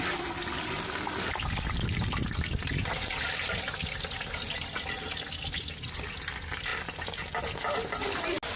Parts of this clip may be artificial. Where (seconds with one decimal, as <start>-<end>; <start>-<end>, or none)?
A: none